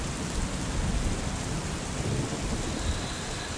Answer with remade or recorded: recorded